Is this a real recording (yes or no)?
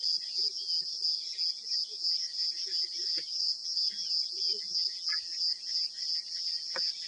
yes